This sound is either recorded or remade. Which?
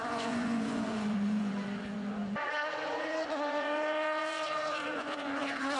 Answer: remade